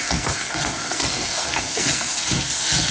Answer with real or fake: fake